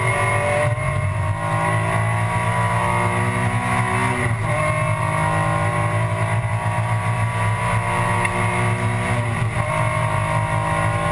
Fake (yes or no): no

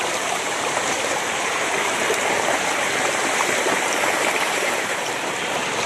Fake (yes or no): yes